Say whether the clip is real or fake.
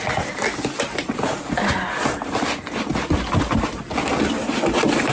real